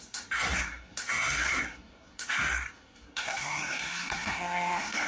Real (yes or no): no